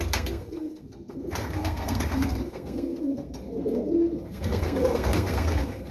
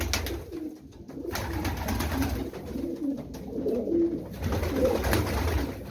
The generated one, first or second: first